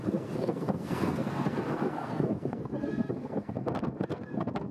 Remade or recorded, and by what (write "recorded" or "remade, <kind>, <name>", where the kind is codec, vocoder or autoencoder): remade, codec, SNAC